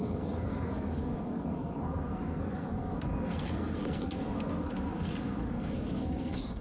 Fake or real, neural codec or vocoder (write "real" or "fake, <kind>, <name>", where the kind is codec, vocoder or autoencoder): fake, codec, SNAC